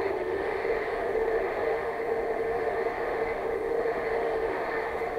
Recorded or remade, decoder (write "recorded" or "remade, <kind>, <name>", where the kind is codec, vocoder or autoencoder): remade, autoencoder, DAC-VAE